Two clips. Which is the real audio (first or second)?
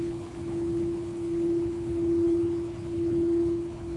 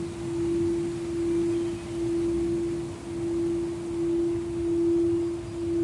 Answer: second